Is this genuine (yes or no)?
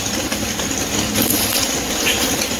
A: no